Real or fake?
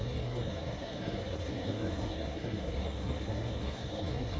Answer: fake